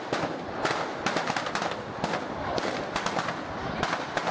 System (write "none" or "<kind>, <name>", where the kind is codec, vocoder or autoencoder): none